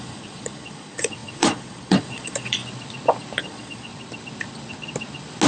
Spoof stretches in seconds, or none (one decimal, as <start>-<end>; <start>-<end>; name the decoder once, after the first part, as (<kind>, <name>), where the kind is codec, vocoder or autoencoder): 0.0-2.6 (vocoder, Vocos); 3.4-3.9